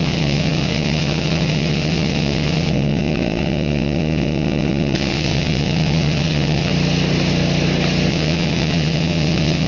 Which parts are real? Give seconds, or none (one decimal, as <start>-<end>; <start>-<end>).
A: 6.7-8.1